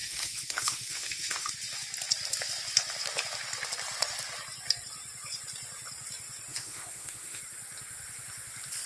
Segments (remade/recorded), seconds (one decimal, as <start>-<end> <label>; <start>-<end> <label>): 0.0-1.5 remade; 1.5-6.5 recorded; 6.5-7.4 remade; 7.4-8.9 recorded